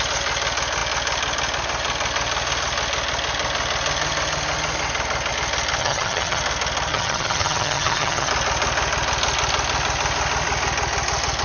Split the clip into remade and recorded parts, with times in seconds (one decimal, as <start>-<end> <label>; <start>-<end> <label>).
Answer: 0.0-5.8 recorded; 5.8-6.4 remade; 6.4-6.9 recorded; 6.9-8.3 remade; 8.3-11.4 recorded